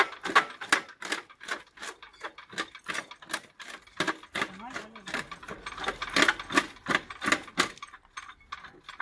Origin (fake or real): real